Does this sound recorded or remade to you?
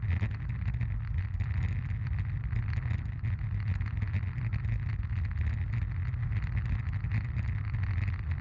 recorded